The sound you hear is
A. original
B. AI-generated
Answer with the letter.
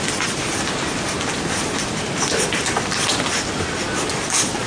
A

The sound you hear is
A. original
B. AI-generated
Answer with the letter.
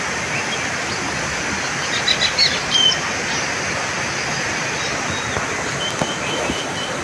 A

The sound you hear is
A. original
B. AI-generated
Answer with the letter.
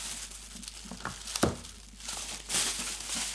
A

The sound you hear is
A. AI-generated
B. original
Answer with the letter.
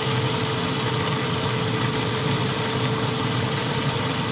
B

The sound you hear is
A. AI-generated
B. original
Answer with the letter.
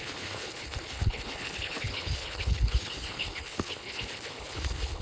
A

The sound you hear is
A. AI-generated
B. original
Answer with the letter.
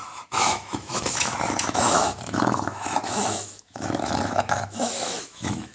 A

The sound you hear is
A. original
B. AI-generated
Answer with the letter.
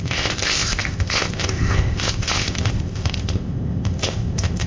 B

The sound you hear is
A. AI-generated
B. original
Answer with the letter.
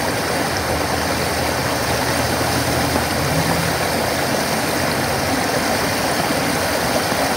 B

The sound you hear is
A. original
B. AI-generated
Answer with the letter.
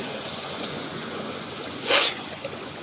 B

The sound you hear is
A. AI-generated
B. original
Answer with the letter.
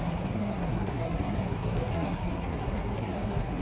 A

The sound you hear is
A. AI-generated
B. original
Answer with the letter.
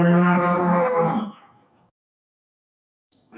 A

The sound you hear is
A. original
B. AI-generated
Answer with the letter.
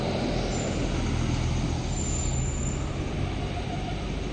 A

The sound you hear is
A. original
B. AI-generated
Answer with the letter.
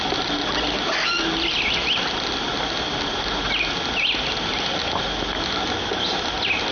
A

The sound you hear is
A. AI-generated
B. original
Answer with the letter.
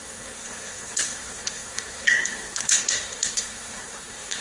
A